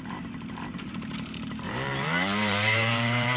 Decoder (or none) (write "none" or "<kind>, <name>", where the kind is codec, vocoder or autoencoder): vocoder, BigVGAN v2